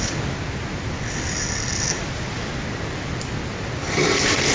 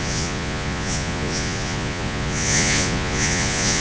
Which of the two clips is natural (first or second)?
first